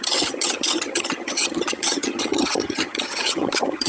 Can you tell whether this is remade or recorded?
remade